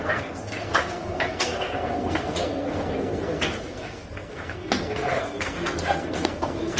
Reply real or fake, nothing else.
fake